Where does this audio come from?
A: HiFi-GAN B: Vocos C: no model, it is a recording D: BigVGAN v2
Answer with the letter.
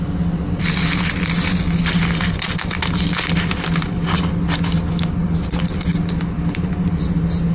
C